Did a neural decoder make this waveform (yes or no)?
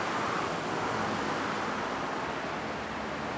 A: no